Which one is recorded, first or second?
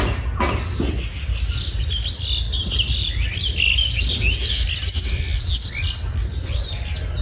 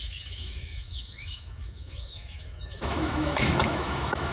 first